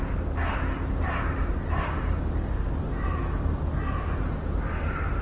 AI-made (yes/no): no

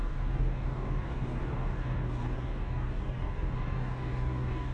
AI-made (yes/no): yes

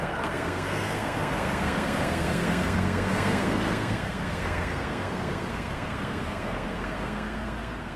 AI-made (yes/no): yes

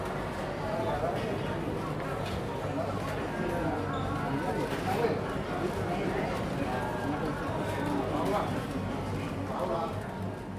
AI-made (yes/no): no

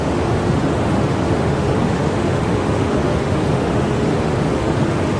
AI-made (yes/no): yes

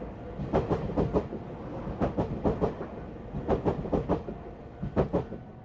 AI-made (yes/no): no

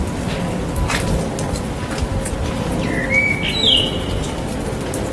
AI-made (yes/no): no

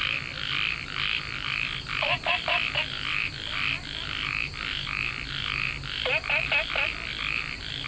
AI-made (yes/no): no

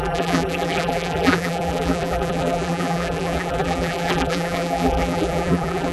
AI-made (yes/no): yes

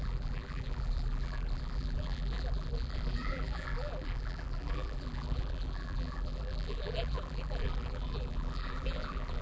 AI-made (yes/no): yes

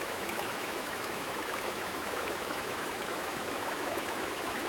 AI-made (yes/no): yes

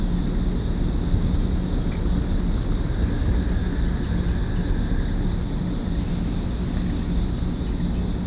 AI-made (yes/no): no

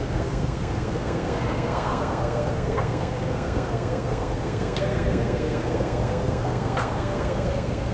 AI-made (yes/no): yes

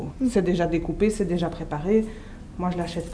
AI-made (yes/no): no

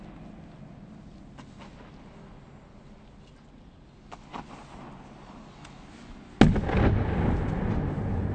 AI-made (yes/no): no